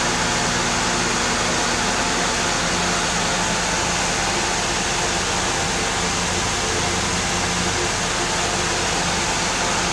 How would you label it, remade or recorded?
recorded